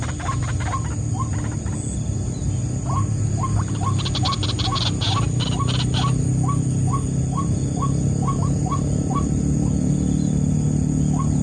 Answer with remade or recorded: recorded